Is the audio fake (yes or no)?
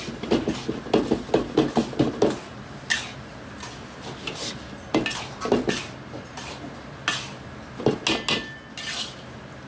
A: no